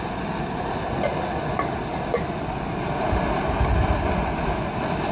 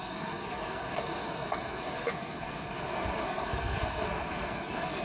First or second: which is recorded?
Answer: first